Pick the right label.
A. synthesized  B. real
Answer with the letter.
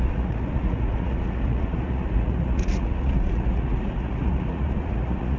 A